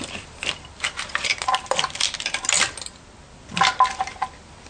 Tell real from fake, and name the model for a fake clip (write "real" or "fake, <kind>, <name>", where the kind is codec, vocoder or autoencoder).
real